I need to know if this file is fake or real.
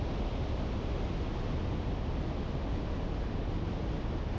real